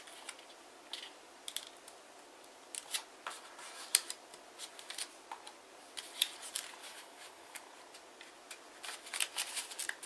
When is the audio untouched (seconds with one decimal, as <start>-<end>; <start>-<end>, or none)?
0.0-6.8; 7.6-10.1